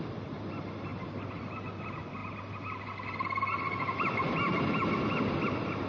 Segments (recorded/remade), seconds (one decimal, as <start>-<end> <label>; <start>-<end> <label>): 0.0-5.9 recorded